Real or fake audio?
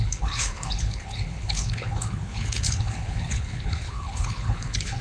fake